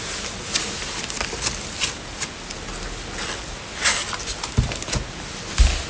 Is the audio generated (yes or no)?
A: no